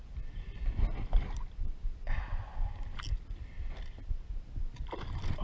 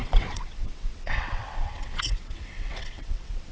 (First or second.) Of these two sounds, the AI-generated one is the second